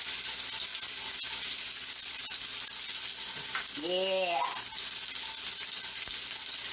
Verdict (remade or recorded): recorded